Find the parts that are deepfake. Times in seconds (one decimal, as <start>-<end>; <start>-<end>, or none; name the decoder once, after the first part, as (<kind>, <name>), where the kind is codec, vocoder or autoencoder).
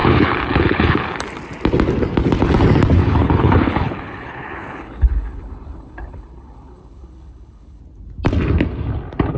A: 0.0-1.2 (codec, HILCodec); 3.0-7.8